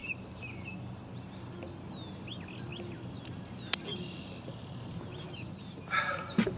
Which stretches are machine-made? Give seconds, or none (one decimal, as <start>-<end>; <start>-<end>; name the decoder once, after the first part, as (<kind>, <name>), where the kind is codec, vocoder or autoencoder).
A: none